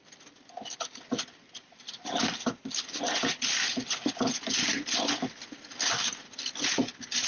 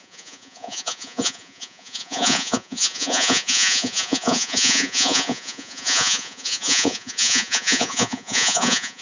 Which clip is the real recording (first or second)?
first